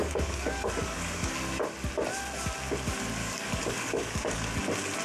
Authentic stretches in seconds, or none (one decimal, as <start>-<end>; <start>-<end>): 1.6-3.2; 4.6-5.0